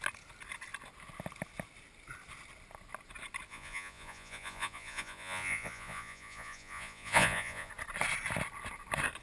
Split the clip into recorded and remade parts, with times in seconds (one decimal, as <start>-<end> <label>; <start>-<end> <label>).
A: 0.0-3.5 recorded; 3.5-7.7 remade; 7.7-9.2 recorded